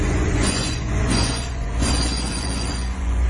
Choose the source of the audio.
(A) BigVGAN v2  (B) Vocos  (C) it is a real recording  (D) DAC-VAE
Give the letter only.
B